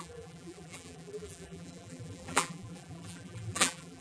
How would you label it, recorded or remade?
remade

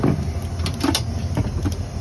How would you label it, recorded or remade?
recorded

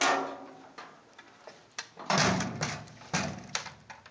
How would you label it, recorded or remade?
recorded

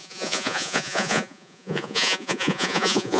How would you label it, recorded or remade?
remade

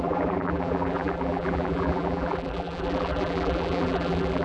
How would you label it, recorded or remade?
remade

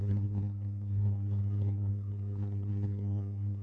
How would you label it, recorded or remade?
remade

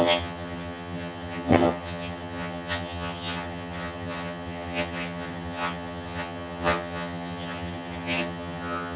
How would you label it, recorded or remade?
remade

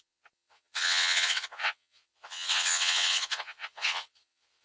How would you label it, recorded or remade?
remade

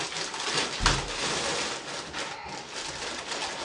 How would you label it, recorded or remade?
recorded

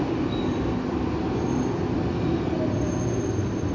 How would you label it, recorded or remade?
recorded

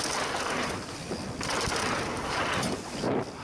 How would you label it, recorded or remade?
recorded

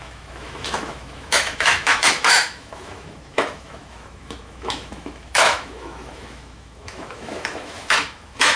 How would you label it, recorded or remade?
remade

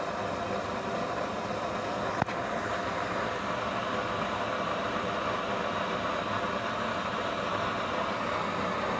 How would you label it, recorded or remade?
recorded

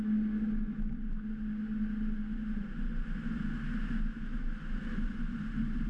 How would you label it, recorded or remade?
recorded